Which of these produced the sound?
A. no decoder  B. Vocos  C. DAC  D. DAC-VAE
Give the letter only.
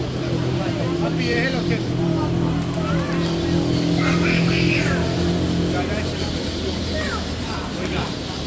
A